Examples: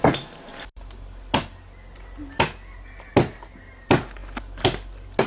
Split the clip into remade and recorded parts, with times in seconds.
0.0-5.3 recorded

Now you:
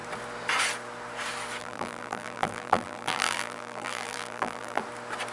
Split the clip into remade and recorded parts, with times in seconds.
0.0-1.6 recorded; 1.6-4.8 remade; 4.8-5.3 recorded